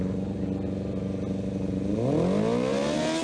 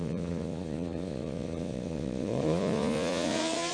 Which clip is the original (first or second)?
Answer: first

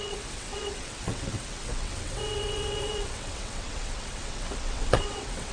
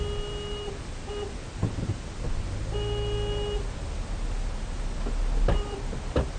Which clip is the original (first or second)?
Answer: second